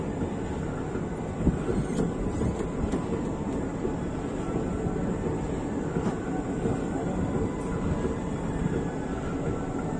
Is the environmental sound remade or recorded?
recorded